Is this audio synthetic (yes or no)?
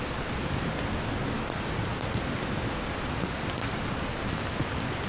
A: no